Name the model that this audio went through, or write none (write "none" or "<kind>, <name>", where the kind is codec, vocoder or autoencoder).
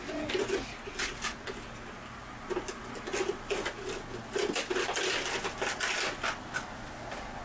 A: none